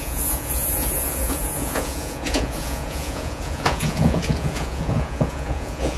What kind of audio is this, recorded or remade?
remade